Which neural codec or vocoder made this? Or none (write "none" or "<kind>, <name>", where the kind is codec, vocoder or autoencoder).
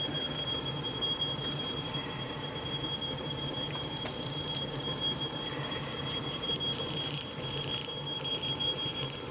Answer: vocoder, BigVGAN v2